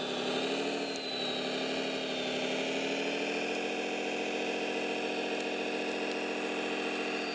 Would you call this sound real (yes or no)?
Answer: yes